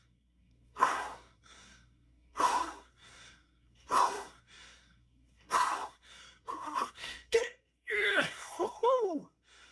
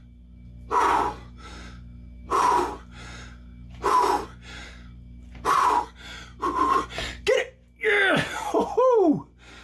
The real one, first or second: second